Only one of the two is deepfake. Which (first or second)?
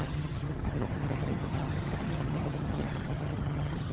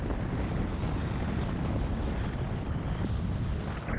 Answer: first